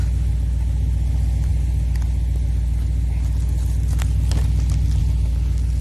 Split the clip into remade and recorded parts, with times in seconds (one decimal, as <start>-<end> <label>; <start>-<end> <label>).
0.0-5.8 recorded